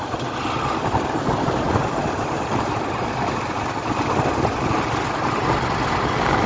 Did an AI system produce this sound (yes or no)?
no